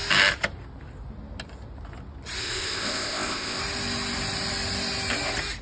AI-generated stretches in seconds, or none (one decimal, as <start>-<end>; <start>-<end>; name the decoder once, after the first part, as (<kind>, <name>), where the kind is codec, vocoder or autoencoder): 2.4-3.6 (codec, ZipCodec)